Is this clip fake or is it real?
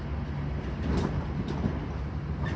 real